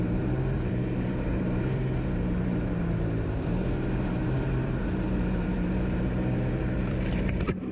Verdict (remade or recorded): remade